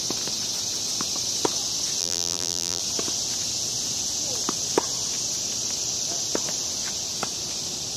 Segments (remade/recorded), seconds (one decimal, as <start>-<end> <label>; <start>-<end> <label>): 0.0-2.0 recorded; 2.0-2.8 remade; 2.8-8.0 recorded